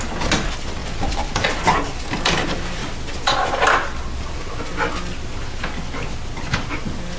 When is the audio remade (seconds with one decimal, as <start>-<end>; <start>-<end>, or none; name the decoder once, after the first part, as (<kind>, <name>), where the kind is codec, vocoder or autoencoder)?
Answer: none